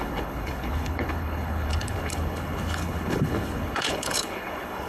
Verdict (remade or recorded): remade